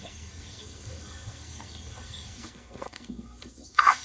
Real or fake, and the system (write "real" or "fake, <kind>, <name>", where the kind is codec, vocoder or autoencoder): fake, codec, SNAC